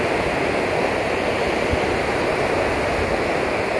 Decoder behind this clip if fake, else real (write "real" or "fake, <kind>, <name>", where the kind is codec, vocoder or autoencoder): real